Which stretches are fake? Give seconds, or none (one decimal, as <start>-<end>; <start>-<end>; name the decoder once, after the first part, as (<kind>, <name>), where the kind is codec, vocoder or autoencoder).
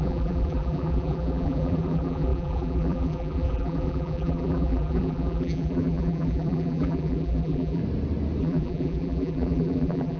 0.0-7.8 (vocoder, BigVGAN v2); 8.4-10.2